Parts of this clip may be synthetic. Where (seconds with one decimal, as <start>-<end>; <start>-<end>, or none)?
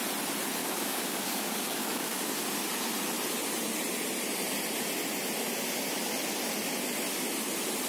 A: 0.6-2.3